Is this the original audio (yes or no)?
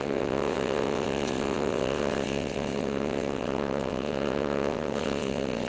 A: no